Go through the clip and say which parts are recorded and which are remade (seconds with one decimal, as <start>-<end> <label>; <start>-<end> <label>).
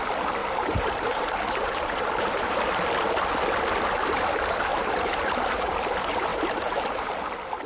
0.0-0.4 recorded; 0.4-1.9 remade; 1.9-4.7 recorded; 4.7-5.7 remade; 5.7-6.3 recorded; 6.3-7.2 remade; 7.2-7.7 recorded